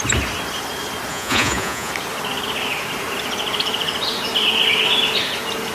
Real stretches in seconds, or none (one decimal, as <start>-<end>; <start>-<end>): 0.0-1.1; 1.9-5.7